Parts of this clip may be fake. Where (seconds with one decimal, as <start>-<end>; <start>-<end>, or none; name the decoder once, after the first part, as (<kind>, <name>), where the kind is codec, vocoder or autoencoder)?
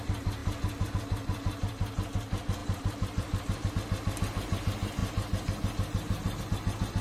2.6-3.7 (vocoder, BigVGAN v2)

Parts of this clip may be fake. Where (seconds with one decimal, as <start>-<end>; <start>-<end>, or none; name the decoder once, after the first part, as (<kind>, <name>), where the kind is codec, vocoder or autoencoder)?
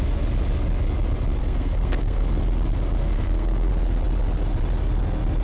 1.4-2.4 (codec, SNAC); 3.0-3.7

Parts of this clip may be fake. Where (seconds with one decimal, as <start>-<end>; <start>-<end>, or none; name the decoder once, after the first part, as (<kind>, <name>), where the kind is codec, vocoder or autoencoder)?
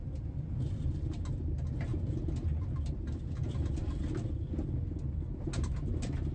none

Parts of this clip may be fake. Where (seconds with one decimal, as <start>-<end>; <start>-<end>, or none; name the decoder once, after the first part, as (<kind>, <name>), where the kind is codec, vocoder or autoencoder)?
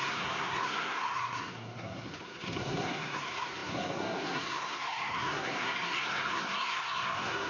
0.0-7.5 (codec, SNAC)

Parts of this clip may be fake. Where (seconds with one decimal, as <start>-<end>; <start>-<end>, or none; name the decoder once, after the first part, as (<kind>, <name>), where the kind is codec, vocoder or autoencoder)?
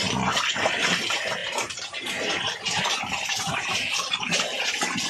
0.0-0.5 (vocoder, BigVGAN v2); 1.4-4.2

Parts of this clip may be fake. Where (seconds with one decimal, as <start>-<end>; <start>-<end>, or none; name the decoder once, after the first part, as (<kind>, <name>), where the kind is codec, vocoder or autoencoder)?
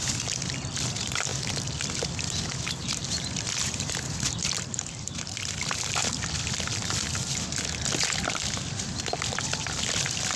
1.3-1.9 (vocoder, BigVGAN v2); 3.0-5.7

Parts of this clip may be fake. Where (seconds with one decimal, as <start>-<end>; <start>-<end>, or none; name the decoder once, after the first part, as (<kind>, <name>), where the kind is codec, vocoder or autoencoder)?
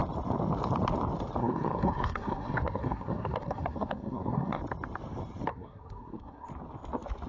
1.4-4.6 (codec, SNAC); 5.5-6.5